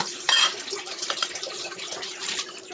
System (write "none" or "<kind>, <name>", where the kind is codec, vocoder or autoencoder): vocoder, BigVGAN v2